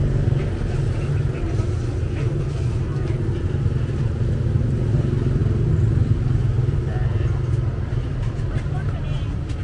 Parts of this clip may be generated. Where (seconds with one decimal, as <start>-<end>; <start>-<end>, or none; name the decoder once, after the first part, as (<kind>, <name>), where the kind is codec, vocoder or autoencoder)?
none